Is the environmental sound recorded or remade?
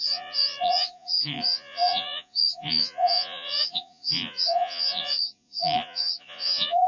remade